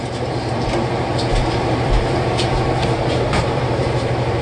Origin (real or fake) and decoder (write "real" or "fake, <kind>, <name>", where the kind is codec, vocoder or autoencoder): fake, vocoder, BigVGAN v2